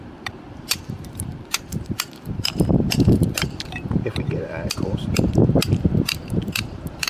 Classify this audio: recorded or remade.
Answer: remade